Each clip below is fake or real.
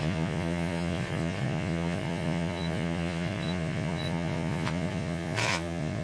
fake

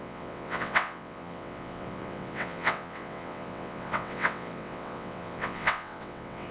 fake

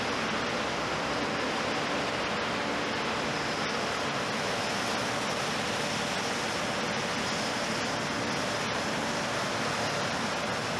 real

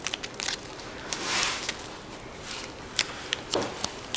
real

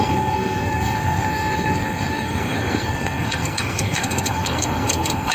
fake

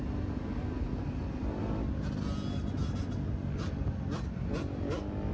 real